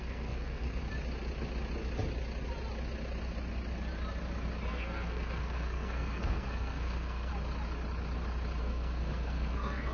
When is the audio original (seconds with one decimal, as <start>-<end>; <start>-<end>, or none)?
0.8-4.7; 7.3-8.6